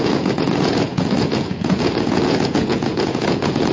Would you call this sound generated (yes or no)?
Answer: yes